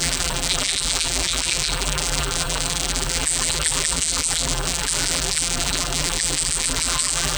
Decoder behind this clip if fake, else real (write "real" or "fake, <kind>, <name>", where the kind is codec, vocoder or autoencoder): fake, vocoder, BigVGAN v2